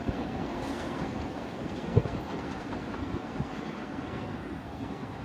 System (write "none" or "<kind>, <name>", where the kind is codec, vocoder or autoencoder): codec, SNAC